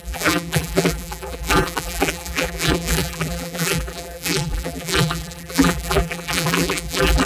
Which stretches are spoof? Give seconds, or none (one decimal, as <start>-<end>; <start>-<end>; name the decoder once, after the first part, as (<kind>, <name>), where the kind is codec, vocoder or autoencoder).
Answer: 0.0-7.3 (vocoder, BigVGAN v2)